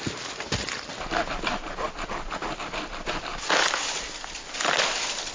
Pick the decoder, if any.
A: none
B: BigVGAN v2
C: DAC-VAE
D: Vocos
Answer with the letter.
A